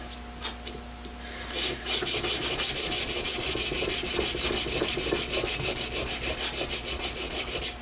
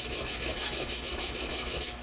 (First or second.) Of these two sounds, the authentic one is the first